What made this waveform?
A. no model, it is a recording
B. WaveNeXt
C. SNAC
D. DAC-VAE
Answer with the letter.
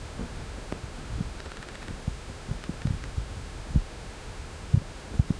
D